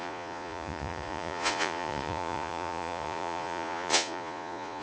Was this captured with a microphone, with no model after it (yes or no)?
no